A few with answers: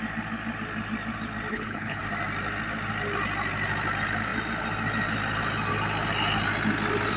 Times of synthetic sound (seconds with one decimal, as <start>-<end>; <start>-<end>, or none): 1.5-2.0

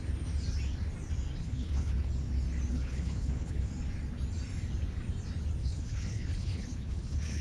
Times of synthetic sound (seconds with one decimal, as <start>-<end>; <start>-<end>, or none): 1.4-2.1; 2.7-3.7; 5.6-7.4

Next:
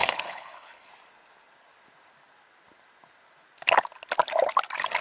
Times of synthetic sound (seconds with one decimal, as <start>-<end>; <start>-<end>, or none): 0.0-0.9

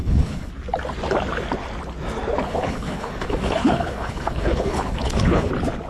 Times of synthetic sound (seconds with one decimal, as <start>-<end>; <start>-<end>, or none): 0.0-0.5; 2.4-5.5

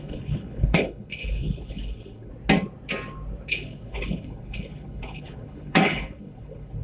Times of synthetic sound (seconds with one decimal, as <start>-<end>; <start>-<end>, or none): 0.0-2.3; 3.5-6.8

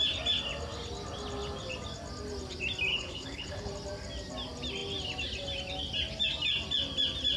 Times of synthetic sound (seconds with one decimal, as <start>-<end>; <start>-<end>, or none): 2.9-3.7

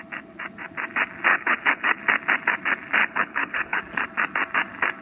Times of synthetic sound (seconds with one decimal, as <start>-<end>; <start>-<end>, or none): 1.3-2.0; 3.0-3.8

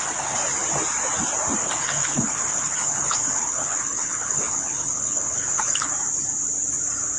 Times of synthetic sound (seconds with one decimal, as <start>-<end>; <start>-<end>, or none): 1.6-5.9